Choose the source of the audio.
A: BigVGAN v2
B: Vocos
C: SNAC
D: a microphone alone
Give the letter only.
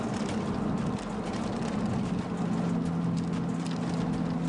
D